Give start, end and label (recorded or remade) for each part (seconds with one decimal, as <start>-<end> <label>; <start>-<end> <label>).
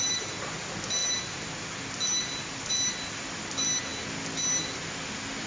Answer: 0.0-5.5 recorded